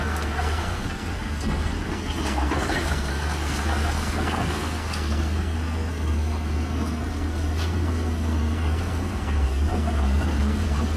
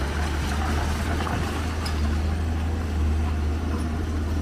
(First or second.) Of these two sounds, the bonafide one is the second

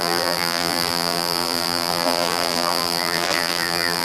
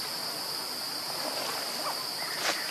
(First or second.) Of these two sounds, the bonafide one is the second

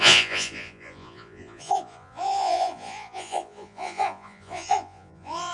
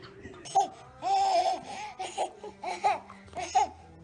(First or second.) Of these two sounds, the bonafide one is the second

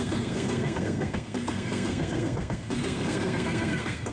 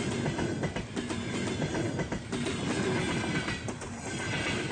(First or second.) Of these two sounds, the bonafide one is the second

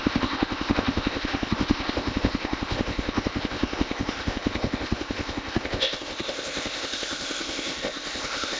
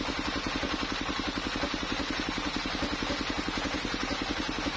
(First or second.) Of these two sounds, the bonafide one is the second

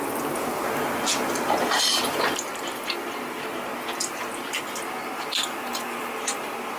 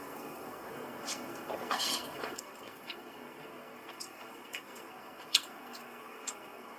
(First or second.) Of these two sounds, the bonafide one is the first